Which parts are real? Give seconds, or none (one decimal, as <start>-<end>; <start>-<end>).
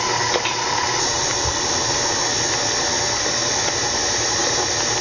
0.0-5.0